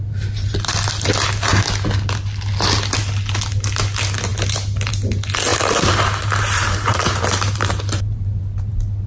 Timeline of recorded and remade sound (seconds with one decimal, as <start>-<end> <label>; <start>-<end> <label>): 0.0-5.5 recorded; 5.5-8.7 remade; 8.7-9.1 recorded